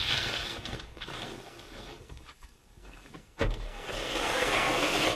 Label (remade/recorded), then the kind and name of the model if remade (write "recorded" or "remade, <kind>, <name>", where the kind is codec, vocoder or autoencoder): remade, codec, SNAC